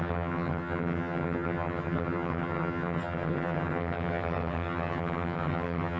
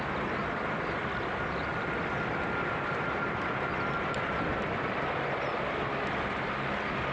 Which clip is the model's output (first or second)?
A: first